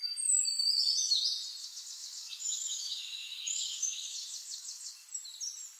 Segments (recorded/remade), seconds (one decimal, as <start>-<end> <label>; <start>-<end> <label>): 0.0-1.6 recorded; 1.6-4.9 remade; 4.9-5.8 recorded

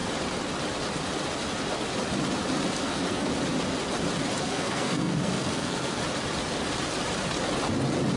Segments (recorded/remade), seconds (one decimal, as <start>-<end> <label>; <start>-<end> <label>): 0.0-2.8 recorded; 2.8-3.3 remade; 3.3-4.4 recorded; 4.4-6.0 remade; 6.0-8.2 recorded

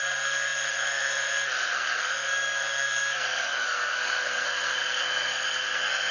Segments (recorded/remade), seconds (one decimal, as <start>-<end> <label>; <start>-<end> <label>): 0.0-6.1 remade

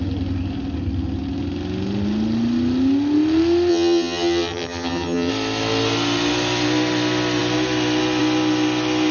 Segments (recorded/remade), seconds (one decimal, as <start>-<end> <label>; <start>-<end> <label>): 0.0-3.7 recorded; 3.7-5.3 remade; 5.3-9.1 recorded

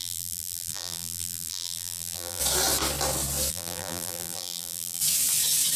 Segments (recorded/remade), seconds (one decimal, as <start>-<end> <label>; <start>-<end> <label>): 0.0-2.4 remade; 2.4-3.5 recorded; 3.5-5.0 remade; 5.0-5.8 recorded

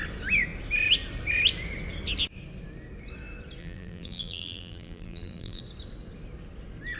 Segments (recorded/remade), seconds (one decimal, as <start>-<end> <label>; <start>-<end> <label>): 0.0-3.6 recorded; 3.6-5.6 remade; 5.6-7.0 recorded

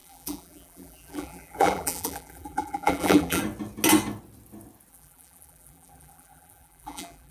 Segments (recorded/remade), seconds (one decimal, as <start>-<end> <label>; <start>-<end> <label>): 0.0-3.4 remade; 3.4-4.9 recorded; 4.9-7.3 remade

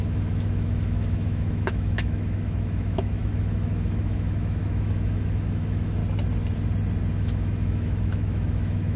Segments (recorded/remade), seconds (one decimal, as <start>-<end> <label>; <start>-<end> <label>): 0.0-6.0 remade; 6.0-7.1 recorded; 7.1-9.0 remade